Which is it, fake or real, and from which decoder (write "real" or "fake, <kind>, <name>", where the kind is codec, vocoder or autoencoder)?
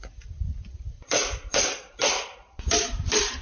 fake, vocoder, BigVGAN v2